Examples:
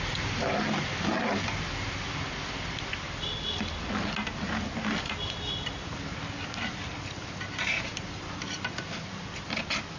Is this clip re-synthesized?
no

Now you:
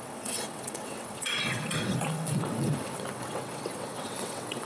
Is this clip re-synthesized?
yes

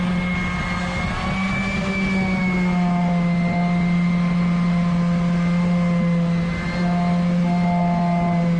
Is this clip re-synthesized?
no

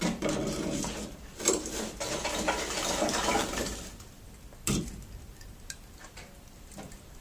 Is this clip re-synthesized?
yes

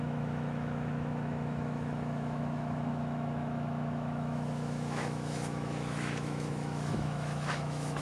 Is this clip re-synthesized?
yes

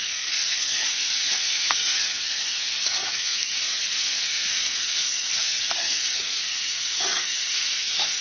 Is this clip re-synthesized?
yes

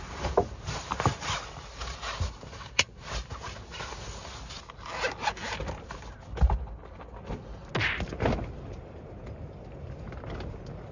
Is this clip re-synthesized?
no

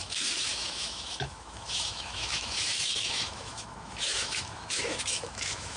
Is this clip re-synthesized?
yes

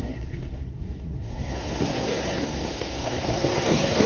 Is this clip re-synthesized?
yes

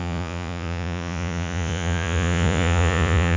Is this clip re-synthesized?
yes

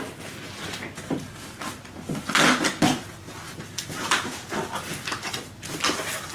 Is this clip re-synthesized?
no